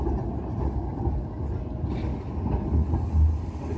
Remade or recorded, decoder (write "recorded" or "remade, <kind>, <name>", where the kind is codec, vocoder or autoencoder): recorded